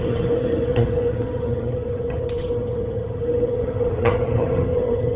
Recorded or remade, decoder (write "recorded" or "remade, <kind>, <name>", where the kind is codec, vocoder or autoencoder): remade, vocoder, HiFi-GAN